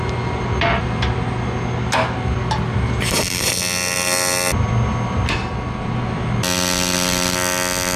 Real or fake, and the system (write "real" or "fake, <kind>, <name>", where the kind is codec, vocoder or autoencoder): real